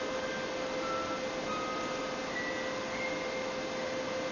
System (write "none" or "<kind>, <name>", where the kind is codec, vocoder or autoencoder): none